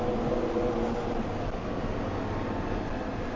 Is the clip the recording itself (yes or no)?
yes